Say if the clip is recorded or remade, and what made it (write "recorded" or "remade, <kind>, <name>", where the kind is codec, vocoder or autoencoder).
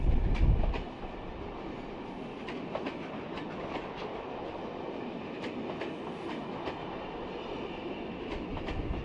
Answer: recorded